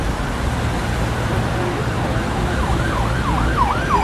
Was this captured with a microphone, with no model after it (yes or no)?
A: no